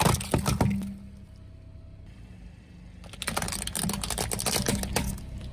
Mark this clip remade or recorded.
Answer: recorded